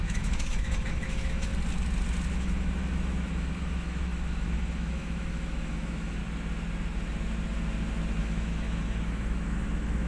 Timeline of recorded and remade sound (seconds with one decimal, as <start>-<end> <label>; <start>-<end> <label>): 0.0-1.5 remade; 1.5-2.3 recorded; 2.3-6.2 remade; 6.2-8.2 recorded; 8.2-10.1 remade